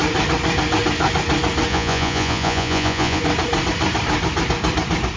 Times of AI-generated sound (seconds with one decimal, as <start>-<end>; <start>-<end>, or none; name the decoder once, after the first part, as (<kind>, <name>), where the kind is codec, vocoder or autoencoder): 1.7-3.2 (vocoder, Vocos)